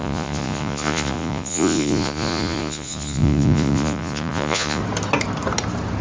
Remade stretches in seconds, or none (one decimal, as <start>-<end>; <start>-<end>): 0.0-4.8